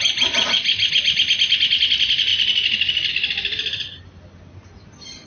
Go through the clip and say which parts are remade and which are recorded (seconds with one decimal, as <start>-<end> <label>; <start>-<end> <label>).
0.0-5.3 recorded